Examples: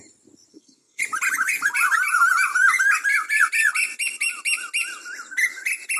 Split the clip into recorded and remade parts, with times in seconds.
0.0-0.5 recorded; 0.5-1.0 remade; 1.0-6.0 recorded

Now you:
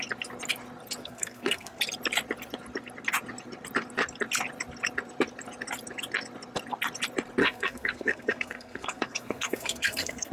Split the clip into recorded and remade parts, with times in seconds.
0.0-1.0 recorded; 1.0-1.8 remade; 1.8-7.4 recorded; 7.4-10.3 remade